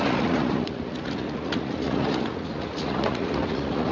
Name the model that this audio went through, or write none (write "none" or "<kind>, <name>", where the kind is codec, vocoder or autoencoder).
vocoder, Vocos